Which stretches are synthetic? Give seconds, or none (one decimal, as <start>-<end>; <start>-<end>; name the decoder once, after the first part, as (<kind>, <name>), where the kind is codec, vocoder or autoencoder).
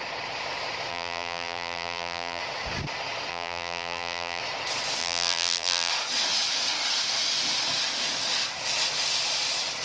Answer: 0.9-2.4 (vocoder, BigVGAN v2); 3.3-4.4; 5.0-5.9